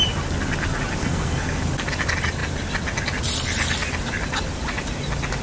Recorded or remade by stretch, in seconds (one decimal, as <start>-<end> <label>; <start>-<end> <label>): 0.0-1.0 recorded; 1.0-1.6 remade; 1.6-5.4 recorded

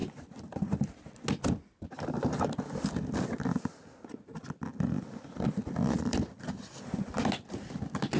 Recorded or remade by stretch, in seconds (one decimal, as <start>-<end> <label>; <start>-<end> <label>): 0.0-8.2 recorded

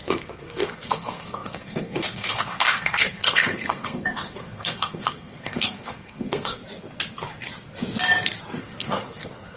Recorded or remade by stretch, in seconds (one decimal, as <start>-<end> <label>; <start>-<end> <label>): 0.0-6.6 remade; 6.6-8.6 recorded; 8.6-9.6 remade